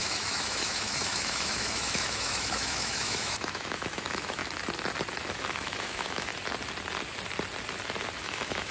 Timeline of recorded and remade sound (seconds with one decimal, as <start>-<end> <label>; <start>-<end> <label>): 0.0-4.4 remade; 4.4-5.3 recorded; 5.3-6.3 remade; 6.3-8.2 recorded; 8.2-8.7 remade